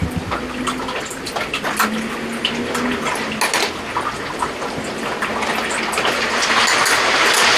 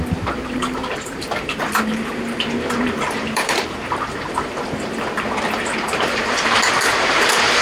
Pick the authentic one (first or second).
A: first